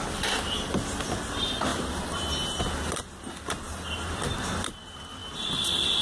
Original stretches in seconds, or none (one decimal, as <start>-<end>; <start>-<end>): 0.0-1.7; 4.8-6.0